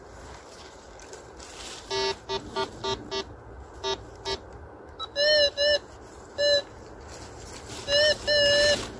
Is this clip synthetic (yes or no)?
no